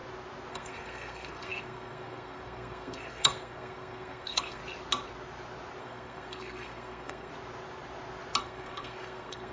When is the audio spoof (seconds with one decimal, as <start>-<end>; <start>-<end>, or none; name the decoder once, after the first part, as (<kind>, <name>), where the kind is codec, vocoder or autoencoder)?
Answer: 0.5-4.6 (codec, SNAC); 5.8-7.3; 8.4-9.5